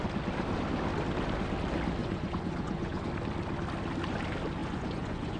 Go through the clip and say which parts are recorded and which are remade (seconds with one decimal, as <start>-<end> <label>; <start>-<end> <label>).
0.0-2.0 recorded; 2.0-3.1 remade; 3.1-4.6 recorded; 4.6-5.4 remade